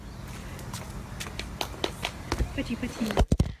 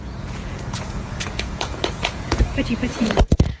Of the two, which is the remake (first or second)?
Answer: second